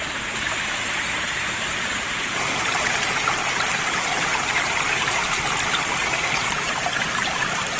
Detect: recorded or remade remade